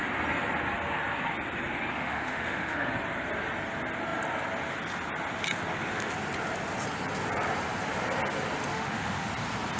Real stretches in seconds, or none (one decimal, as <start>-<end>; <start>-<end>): 0.0-1.9; 2.9-8.7; 9.3-9.8

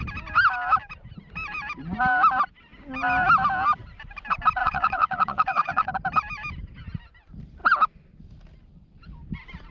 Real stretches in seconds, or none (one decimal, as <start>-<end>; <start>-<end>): 0.0-4.6; 5.9-9.7

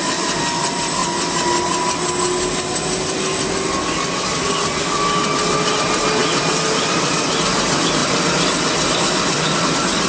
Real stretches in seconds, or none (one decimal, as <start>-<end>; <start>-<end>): 1.0-5.8; 6.2-6.8

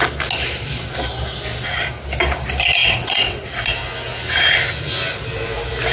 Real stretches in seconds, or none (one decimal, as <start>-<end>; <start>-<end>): 0.0-2.8; 3.4-5.9

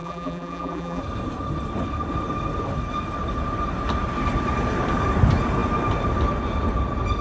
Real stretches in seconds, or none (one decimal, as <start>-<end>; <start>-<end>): 1.0-7.2

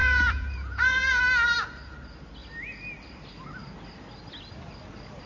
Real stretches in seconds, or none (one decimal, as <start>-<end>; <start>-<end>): 1.2-5.3

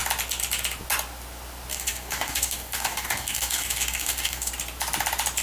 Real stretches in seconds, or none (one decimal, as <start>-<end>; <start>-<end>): 0.0-1.7; 4.5-5.4

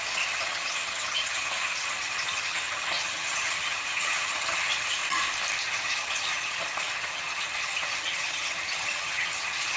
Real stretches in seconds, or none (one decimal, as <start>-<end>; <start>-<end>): 5.0-5.6